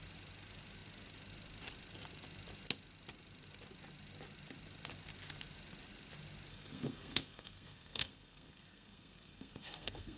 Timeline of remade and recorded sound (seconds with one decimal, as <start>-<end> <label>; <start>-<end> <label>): 0.0-6.5 recorded; 6.5-10.2 remade